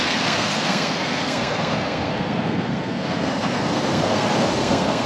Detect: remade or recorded remade